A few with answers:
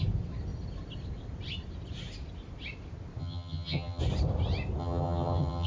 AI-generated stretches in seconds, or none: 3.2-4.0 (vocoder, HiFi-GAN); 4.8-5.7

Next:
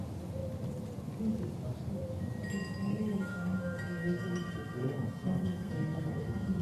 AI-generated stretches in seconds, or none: 2.9-6.6 (codec, SNAC)

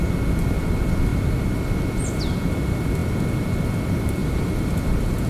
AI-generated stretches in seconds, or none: 1.1-1.8 (vocoder, BigVGAN v2); 4.2-5.3